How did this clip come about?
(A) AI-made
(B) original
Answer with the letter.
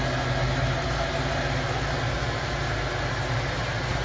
B